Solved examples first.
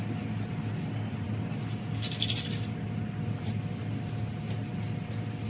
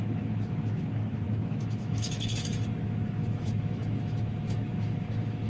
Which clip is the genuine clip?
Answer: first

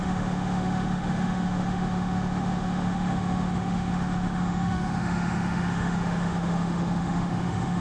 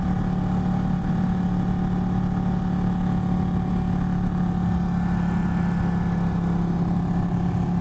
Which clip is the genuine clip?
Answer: second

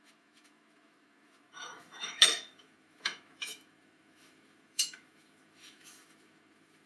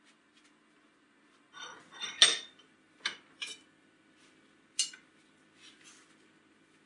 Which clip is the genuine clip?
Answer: second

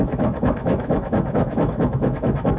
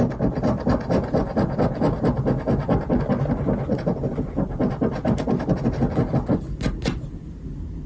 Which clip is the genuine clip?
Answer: second